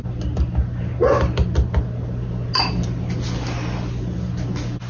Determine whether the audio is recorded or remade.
recorded